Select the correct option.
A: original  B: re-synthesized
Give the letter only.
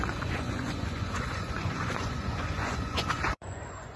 B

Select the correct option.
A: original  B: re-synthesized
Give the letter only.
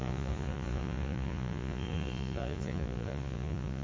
B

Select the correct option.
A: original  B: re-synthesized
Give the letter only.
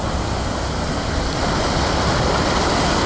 A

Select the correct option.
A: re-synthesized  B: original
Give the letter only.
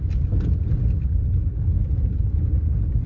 B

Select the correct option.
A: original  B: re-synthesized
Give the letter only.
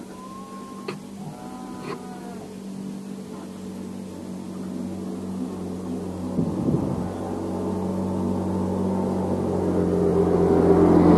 A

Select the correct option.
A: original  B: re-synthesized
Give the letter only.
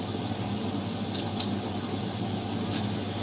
A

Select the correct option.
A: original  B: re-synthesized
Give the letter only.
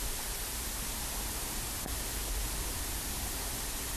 A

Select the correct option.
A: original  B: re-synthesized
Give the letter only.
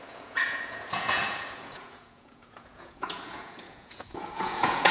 B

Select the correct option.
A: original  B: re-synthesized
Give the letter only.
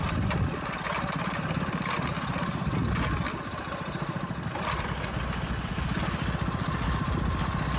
A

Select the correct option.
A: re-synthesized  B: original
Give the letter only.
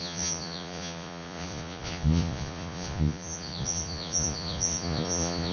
A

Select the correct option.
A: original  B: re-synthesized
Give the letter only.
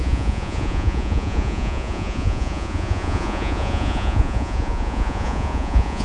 B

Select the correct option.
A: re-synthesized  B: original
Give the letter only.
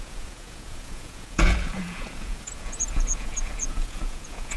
A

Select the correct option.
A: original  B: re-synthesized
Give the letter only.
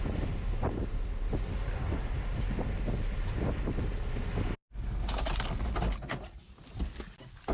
A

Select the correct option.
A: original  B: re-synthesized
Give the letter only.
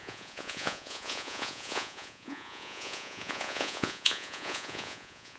B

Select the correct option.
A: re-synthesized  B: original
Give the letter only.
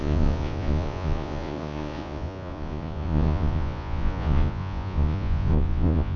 A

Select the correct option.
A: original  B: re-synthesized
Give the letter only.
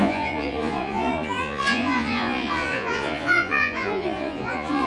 B